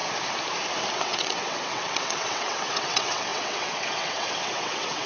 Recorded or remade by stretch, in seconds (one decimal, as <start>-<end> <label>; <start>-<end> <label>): 0.0-0.9 recorded; 0.9-5.1 remade